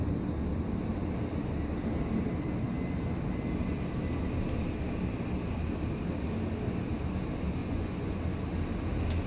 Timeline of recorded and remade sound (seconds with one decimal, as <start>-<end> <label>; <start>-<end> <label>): 0.0-7.6 recorded; 7.6-8.2 remade; 8.2-9.3 recorded